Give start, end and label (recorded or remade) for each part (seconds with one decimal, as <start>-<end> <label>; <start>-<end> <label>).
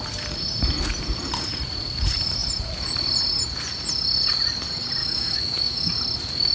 0.0-5.0 recorded; 5.0-5.9 remade; 5.9-6.5 recorded